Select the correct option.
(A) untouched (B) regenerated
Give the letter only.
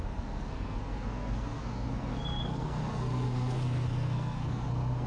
B